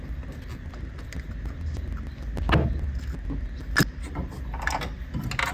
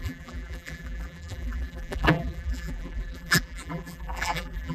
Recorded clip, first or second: first